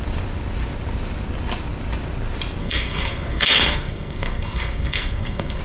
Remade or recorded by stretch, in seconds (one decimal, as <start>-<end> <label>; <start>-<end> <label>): 0.0-2.6 recorded; 2.6-5.6 remade

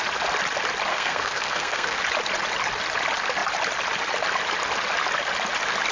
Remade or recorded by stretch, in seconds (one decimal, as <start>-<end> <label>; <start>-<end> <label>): 0.0-0.9 recorded; 0.9-2.0 remade; 2.0-5.9 recorded

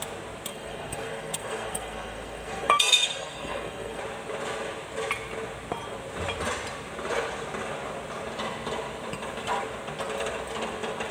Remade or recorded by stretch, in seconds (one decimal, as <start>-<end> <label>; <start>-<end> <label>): 0.0-0.5 recorded; 0.5-4.0 remade; 4.0-11.1 recorded

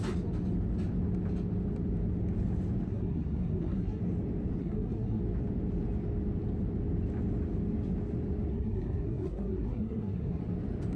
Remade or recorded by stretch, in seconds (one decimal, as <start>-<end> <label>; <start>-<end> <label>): 0.0-2.9 recorded; 2.9-4.0 remade; 4.0-4.6 recorded; 4.6-5.2 remade; 5.2-8.5 recorded; 8.5-10.4 remade; 10.4-11.0 recorded

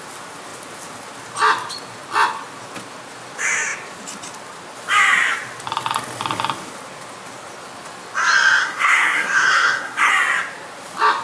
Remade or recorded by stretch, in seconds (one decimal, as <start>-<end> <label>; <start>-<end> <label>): 0.0-8.6 recorded; 8.6-10.1 remade; 10.1-11.2 recorded

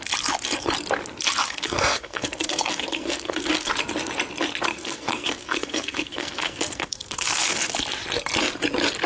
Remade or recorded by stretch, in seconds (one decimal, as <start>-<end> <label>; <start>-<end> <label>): 0.0-1.4 recorded; 1.4-3.7 remade; 3.7-4.7 recorded; 4.7-7.6 remade; 7.6-9.1 recorded

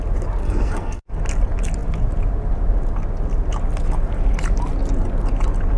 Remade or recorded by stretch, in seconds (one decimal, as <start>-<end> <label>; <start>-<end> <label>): 0.0-0.4 recorded; 0.4-1.1 remade; 1.1-5.8 recorded

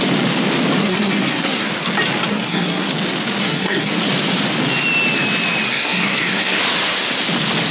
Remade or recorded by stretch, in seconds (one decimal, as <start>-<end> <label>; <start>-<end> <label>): 0.0-0.8 recorded; 0.8-1.7 remade; 1.7-2.3 recorded; 2.3-2.9 remade; 2.9-3.4 recorded; 3.4-4.0 remade; 4.0-5.7 recorded; 5.7-6.6 remade; 6.6-7.7 recorded